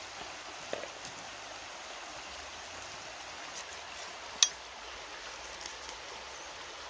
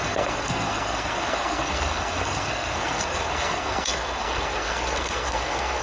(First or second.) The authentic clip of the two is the first